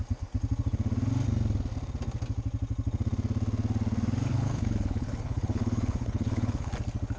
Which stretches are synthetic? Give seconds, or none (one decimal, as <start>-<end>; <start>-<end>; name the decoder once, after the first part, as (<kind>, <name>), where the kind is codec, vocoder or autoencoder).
4.3-6.7 (codec, HILCodec)